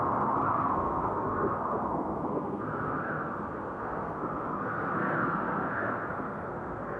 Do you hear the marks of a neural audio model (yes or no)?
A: yes